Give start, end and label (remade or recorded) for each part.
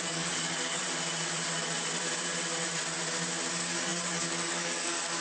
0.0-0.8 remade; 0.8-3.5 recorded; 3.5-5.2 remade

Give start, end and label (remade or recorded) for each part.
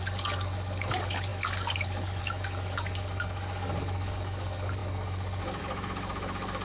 0.0-6.6 remade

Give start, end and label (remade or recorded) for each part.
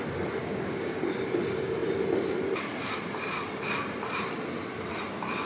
0.0-0.4 recorded; 0.4-1.0 remade; 1.0-5.5 recorded